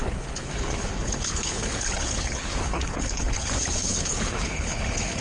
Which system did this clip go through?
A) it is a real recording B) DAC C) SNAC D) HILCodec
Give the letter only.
D